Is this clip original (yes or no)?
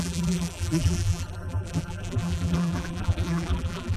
no